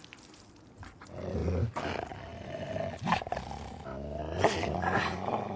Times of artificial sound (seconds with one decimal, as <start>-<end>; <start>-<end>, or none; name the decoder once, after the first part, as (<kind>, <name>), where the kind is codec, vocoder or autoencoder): none